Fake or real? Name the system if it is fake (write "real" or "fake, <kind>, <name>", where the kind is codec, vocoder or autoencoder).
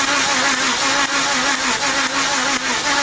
real